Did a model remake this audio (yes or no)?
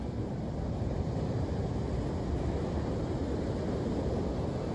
no